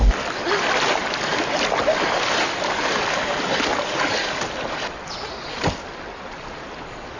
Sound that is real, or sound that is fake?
real